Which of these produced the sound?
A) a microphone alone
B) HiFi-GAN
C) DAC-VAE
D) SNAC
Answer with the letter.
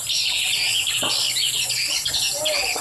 A